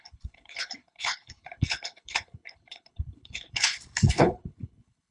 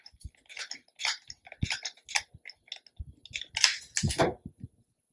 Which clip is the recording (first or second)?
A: second